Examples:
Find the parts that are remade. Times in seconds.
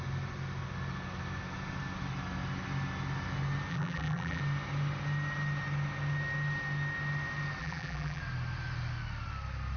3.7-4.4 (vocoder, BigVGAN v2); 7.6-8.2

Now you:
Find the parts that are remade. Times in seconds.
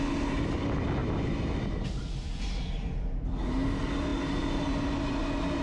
none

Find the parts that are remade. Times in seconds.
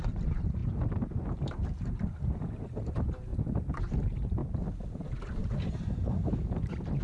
0.0-3.3 (vocoder, BigVGAN v2); 3.8-4.4